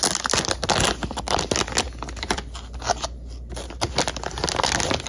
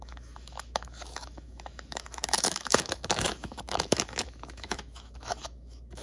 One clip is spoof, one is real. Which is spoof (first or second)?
second